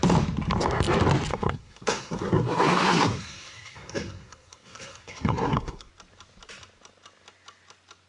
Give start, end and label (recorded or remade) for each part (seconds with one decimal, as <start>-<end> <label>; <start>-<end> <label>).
0.0-1.3 recorded; 1.3-5.9 remade; 5.9-8.1 recorded